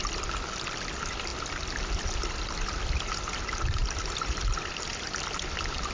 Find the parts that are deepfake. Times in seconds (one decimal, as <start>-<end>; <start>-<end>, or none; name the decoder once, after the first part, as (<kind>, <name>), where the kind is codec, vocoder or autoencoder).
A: none